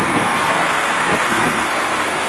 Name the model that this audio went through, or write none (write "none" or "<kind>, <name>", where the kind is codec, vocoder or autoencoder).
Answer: codec, SNAC